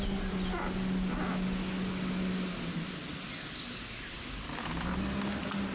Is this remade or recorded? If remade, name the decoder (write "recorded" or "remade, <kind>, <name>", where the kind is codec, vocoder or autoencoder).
recorded